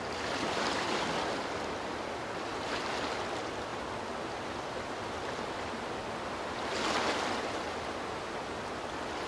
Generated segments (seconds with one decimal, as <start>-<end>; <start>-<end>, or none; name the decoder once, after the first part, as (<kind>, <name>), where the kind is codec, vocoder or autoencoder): 3.7-5.7 (vocoder, BigVGAN v2)